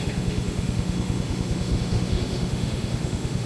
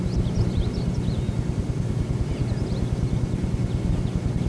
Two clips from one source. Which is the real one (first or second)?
second